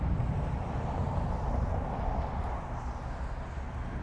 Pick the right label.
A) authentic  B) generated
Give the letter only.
A